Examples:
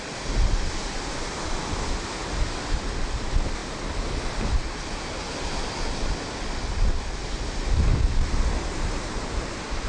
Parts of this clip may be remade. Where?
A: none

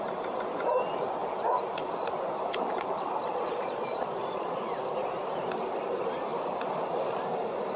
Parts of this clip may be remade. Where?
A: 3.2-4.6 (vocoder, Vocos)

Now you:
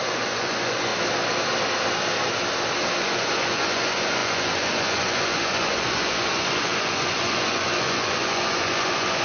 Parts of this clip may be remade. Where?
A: 0.0-0.9 (vocoder, Vocos); 3.0-9.2